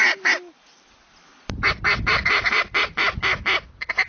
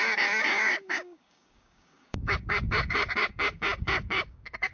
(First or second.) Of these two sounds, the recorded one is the first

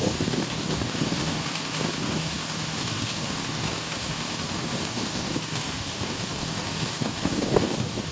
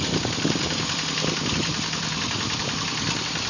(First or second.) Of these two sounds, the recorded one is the second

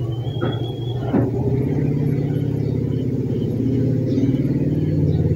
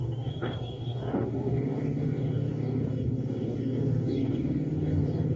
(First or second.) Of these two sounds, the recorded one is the first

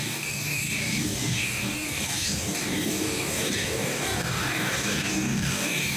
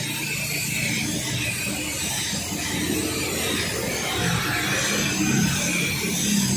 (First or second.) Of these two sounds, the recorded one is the second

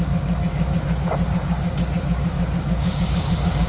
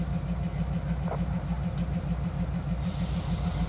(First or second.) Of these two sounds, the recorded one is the second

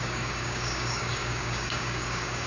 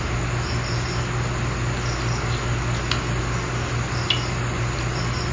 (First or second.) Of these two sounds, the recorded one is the second